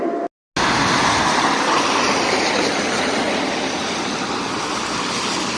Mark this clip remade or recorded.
recorded